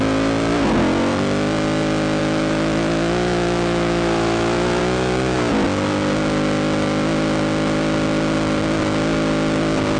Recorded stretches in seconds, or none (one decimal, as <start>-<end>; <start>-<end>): 0.0-2.2; 4.8-10.0